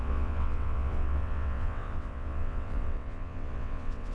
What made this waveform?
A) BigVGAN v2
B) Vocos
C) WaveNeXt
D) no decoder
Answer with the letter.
C